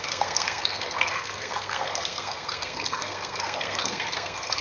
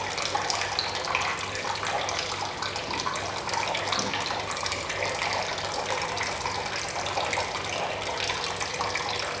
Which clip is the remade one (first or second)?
first